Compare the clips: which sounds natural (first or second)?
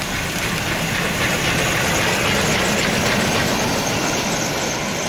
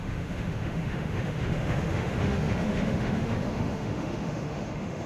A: first